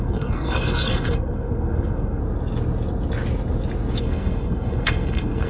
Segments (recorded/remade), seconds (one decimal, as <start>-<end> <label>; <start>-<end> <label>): 0.0-2.2 remade; 2.2-4.0 recorded; 4.0-5.5 remade